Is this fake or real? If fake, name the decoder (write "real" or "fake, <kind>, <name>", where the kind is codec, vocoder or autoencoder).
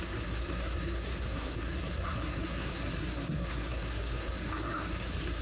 fake, codec, SNAC